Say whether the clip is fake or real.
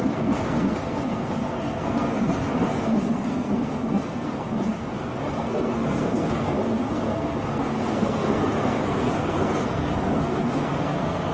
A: fake